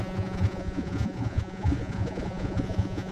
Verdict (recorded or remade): remade